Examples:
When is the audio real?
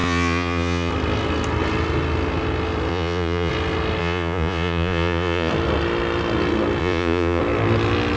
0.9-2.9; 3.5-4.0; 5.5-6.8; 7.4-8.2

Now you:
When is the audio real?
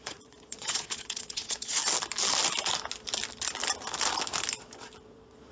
1.8-5.1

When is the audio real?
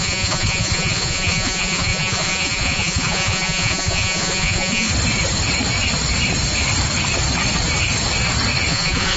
4.9-8.7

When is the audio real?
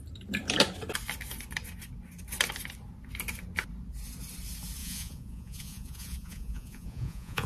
0.0-4.8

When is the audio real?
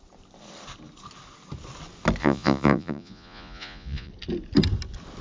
0.0-2.2; 4.1-5.2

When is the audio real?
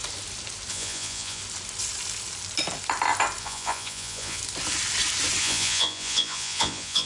0.0-0.7; 1.4-3.4; 4.4-5.4